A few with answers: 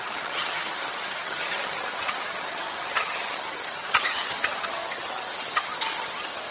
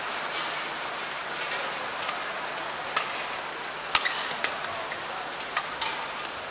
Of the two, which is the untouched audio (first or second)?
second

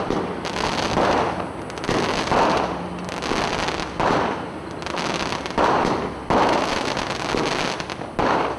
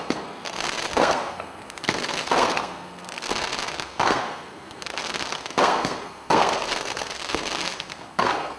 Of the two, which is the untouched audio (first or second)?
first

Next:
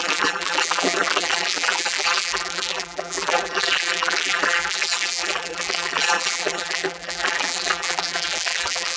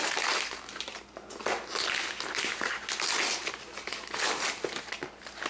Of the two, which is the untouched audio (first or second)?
second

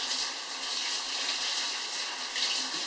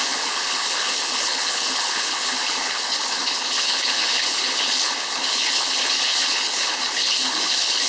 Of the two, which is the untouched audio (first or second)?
first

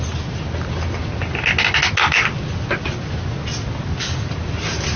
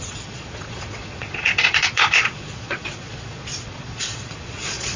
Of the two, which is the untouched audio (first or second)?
first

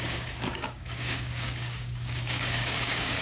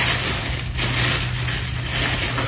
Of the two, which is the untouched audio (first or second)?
second